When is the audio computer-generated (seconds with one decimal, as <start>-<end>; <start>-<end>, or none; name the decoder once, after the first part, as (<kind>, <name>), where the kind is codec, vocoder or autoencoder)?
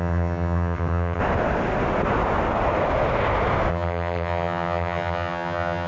0.0-1.2 (vocoder, HiFi-GAN); 3.7-5.9